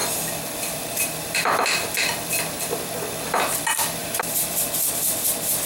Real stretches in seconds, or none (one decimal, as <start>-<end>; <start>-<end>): 2.4-4.0